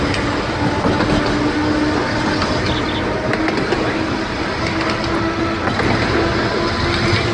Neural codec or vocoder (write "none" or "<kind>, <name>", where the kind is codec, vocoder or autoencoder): none